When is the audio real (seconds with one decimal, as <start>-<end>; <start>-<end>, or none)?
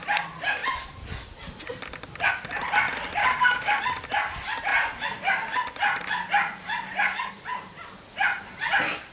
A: 0.0-3.2; 3.8-9.1